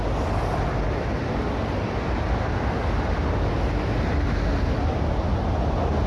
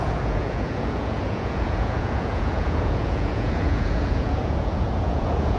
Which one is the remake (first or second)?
second